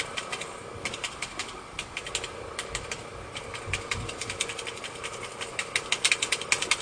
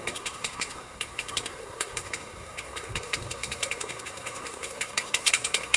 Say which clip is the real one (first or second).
first